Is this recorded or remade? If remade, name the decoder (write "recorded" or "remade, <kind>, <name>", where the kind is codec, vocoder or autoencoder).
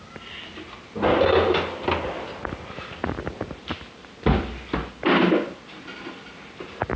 recorded